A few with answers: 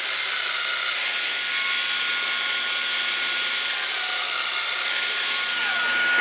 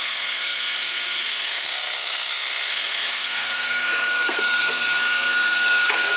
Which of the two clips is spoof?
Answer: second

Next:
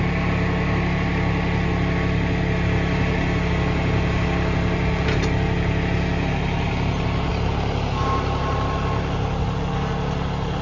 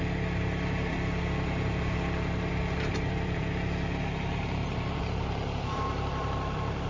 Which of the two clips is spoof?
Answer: second